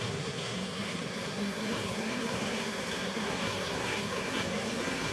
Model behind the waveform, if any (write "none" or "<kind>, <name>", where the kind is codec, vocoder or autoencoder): codec, SNAC